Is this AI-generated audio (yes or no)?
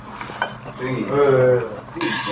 no